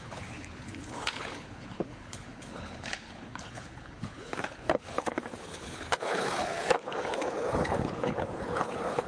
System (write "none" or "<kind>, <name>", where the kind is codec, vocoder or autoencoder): codec, HILCodec